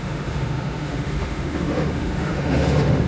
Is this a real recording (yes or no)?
no